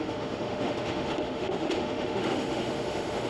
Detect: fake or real fake